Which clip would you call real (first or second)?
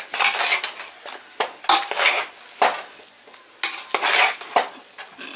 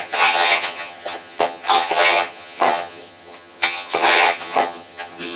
first